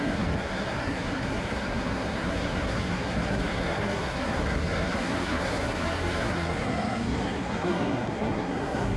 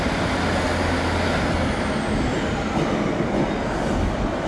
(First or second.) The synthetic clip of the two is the first